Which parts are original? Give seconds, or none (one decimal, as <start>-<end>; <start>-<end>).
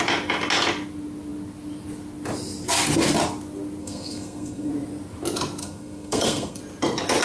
0.0-3.8; 4.7-5.6; 6.6-7.2